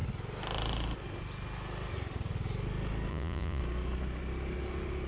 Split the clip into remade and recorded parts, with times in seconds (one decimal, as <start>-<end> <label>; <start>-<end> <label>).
0.0-3.1 recorded; 3.1-3.6 remade; 3.6-5.1 recorded